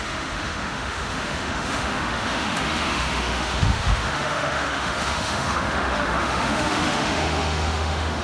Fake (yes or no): yes